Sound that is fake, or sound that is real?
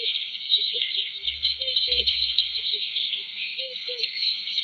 fake